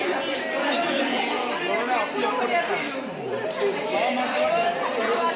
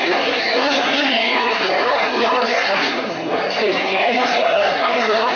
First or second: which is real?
first